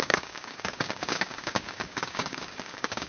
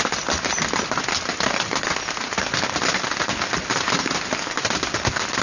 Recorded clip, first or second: second